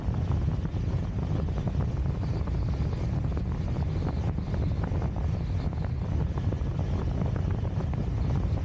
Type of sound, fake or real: real